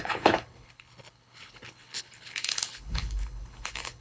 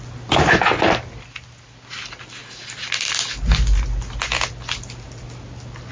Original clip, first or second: second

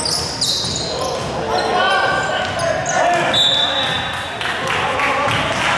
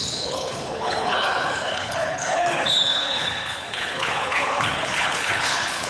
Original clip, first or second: first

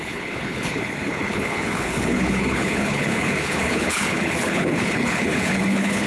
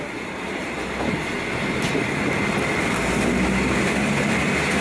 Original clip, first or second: second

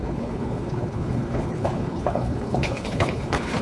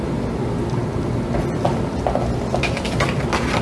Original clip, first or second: second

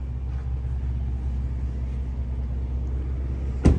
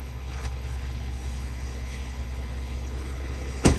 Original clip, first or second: first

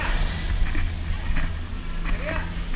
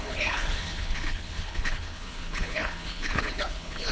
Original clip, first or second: first